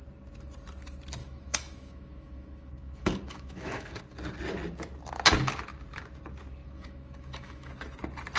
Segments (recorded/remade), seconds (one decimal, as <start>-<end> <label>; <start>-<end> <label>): 0.0-1.2 recorded; 1.2-4.0 remade; 4.0-6.6 recorded; 6.6-7.7 remade; 7.7-8.4 recorded